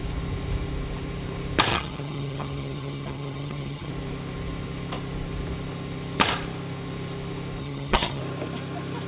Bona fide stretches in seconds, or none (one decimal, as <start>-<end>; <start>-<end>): 0.0-1.7; 3.9-7.6; 8.2-9.1